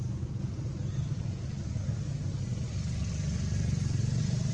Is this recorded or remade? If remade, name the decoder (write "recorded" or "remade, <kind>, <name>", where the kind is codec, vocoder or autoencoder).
recorded